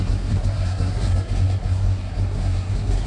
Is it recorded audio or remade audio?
remade